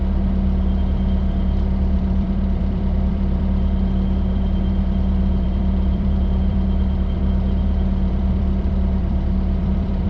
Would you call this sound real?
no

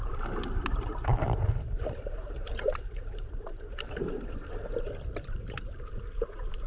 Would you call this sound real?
no